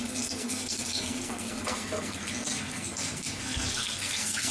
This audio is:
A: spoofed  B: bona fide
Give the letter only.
A